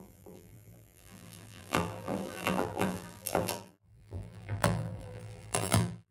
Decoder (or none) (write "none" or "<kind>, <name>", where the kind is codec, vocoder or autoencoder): vocoder, BigVGAN v2